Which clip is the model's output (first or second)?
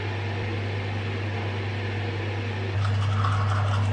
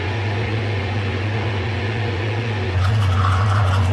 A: second